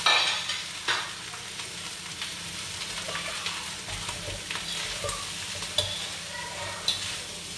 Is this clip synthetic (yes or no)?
no